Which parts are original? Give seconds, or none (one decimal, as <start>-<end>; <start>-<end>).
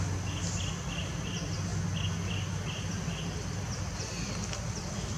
0.0-5.2